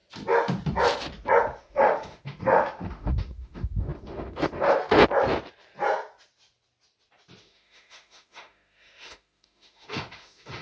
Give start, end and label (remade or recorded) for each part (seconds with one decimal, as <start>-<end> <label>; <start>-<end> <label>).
0.0-1.6 recorded; 1.6-5.0 remade; 5.0-7.4 recorded; 7.4-10.6 remade